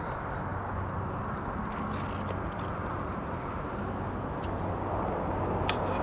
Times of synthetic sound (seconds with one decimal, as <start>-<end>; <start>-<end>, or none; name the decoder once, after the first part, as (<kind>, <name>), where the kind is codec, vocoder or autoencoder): none